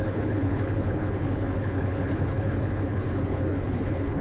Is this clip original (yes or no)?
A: no